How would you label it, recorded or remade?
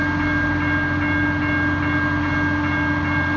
recorded